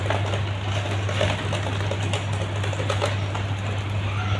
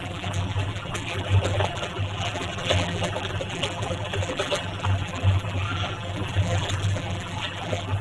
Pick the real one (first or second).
first